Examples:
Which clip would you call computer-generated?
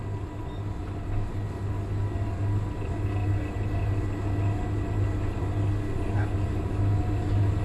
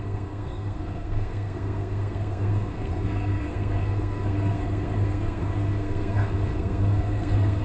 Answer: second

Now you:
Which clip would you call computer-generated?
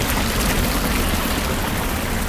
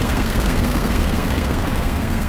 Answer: second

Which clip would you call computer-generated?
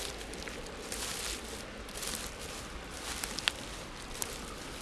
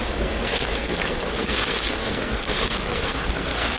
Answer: second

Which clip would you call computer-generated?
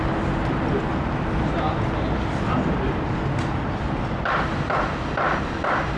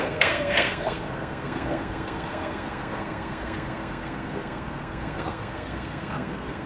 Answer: second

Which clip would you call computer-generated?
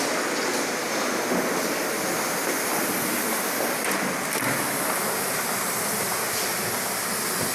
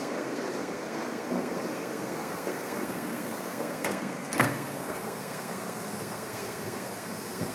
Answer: second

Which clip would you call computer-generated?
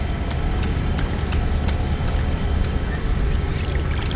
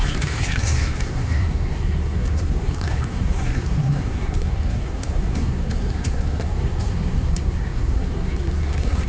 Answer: second